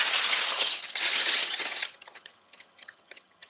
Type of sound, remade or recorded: remade